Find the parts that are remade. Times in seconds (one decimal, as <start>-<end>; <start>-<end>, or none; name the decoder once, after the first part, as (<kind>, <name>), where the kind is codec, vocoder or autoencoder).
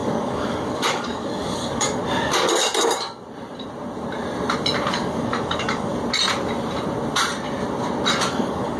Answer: 0.0-2.0 (codec, DAC); 4.9-5.9; 8.3-8.8